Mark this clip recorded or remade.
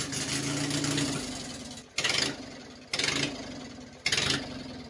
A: recorded